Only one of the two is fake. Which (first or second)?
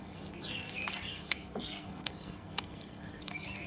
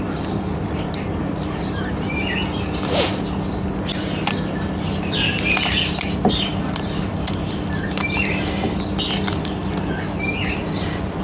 first